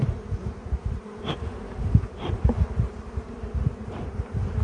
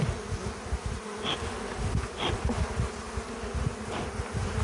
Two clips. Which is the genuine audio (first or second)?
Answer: second